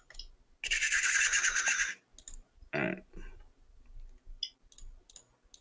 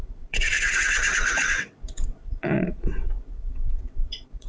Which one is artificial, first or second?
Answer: second